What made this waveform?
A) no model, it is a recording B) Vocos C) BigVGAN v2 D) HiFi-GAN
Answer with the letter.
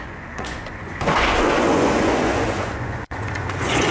B